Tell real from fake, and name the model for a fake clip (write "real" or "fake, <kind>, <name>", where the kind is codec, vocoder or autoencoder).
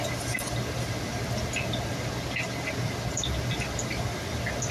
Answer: real